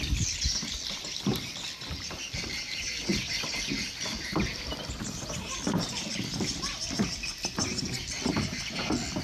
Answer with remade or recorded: remade